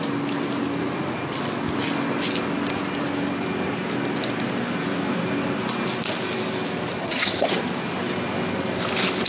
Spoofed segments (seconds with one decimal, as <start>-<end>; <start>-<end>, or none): 7.0-7.5